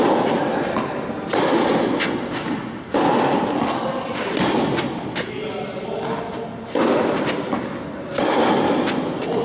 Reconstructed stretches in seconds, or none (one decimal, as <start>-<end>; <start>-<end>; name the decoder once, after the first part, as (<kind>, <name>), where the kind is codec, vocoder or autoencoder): none